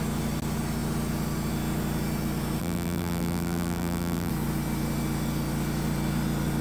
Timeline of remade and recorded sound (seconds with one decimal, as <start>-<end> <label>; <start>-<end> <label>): 0.0-2.6 recorded; 2.6-4.3 remade; 4.3-6.6 recorded